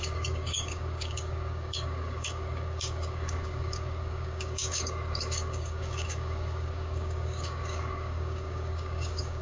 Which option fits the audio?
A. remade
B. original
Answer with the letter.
A